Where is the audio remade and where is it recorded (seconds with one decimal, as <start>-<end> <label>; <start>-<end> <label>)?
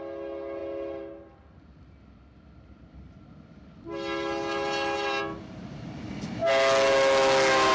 0.0-7.7 recorded